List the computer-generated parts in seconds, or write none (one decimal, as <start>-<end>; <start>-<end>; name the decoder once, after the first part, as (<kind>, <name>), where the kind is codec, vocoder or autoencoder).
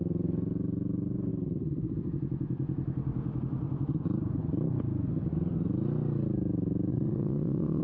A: 6.9-7.8 (vocoder, Vocos)